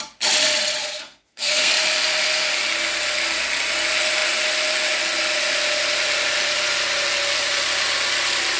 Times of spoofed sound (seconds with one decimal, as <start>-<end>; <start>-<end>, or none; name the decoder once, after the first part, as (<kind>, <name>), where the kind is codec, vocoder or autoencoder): 0.8-1.7 (codec, SNAC)